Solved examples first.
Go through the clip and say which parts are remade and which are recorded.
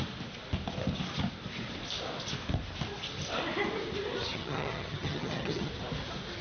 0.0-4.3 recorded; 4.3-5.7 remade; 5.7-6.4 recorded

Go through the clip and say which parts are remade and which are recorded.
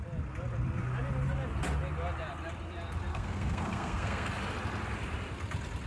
0.0-3.1 recorded; 3.1-4.3 remade; 4.3-5.9 recorded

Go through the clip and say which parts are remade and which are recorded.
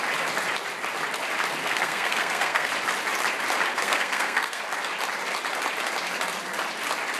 0.0-1.6 recorded; 1.6-2.7 remade; 2.7-3.7 recorded; 3.7-4.6 remade; 4.6-7.2 recorded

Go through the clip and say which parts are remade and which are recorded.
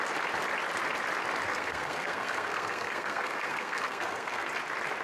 0.0-1.5 recorded; 1.5-4.5 remade; 4.5-5.0 recorded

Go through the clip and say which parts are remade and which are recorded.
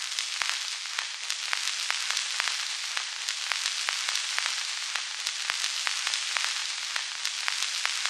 0.0-8.1 recorded